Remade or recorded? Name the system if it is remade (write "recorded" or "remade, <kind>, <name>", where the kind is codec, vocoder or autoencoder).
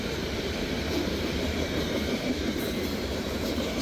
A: remade, vocoder, BigVGAN v2